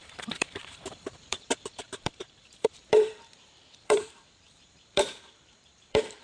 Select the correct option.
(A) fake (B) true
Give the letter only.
A